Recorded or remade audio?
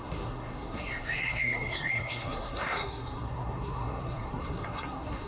remade